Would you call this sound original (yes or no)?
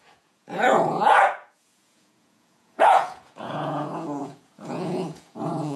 no